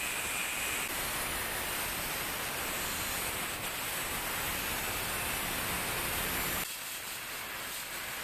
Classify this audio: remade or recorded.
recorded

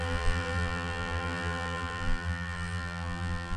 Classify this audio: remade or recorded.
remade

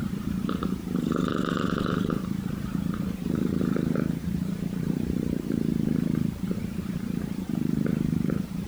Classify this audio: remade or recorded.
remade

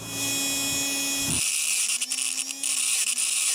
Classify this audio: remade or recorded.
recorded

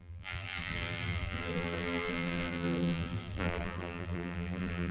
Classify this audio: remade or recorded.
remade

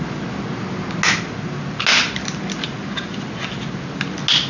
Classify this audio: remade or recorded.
recorded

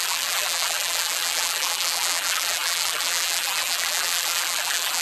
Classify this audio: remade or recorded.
remade